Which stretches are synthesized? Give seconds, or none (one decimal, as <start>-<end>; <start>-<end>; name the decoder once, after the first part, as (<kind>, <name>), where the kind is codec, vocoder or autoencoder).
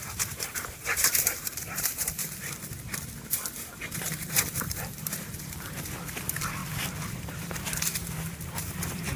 0.0-2.2 (vocoder, BigVGAN v2); 3.3-6.6; 7.2-9.2